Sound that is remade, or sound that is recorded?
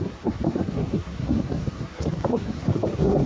remade